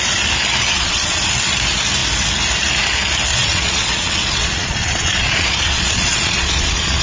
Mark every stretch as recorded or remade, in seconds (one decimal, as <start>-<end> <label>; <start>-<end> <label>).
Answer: 0.0-0.7 recorded; 0.7-1.2 remade; 1.2-3.3 recorded; 3.3-7.0 remade